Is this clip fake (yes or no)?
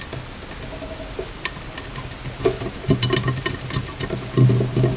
no